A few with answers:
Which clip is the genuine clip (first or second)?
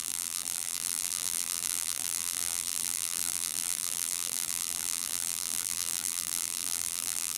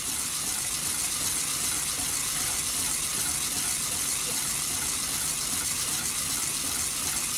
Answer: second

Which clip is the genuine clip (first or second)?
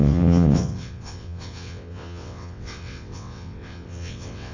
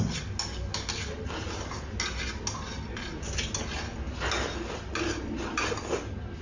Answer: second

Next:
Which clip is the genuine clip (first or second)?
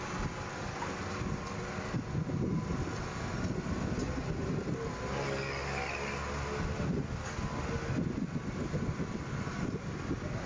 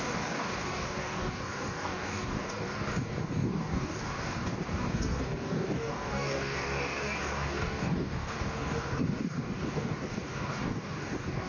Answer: first